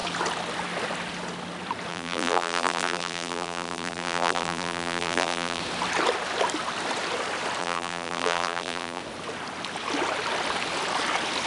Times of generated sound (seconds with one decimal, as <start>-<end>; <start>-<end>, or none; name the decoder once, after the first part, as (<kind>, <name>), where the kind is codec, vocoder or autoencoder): 1.9-5.6 (vocoder, BigVGAN v2); 7.6-9.0